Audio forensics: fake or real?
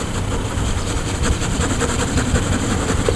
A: fake